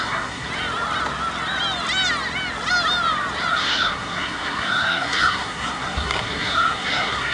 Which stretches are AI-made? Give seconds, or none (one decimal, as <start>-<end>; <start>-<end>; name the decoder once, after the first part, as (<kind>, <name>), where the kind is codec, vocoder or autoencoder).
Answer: 0.0-0.5 (codec, SNAC); 3.5-7.3